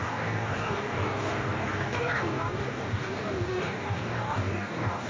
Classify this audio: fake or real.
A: fake